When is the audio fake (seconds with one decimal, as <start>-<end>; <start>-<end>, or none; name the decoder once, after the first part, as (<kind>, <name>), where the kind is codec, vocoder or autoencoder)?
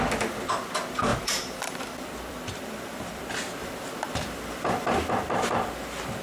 1.1-3.2 (vocoder, BigVGAN v2); 3.6-5.1